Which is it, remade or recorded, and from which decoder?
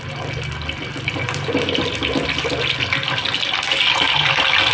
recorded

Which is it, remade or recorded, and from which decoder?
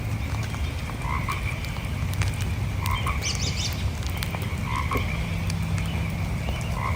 recorded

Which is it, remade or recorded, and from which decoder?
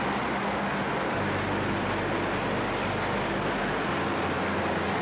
recorded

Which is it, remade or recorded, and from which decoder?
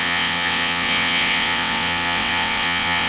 remade, vocoder, WaveNeXt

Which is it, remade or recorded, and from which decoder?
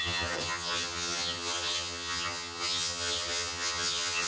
remade, vocoder, HiFi-GAN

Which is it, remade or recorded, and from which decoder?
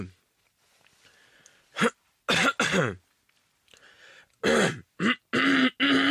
recorded